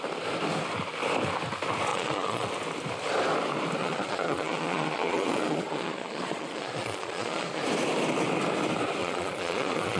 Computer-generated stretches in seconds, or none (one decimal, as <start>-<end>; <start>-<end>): 1.9-2.5; 3.8-7.6; 9.0-10.0